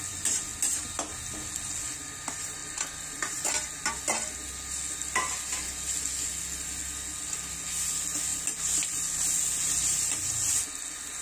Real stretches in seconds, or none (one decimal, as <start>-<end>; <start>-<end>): 0.0-11.2